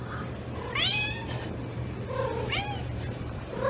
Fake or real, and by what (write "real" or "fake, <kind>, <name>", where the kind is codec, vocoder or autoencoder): fake, vocoder, BigVGAN v2